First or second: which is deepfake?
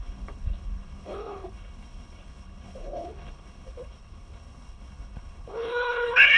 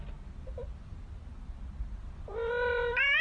first